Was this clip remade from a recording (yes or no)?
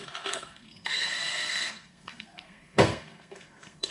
yes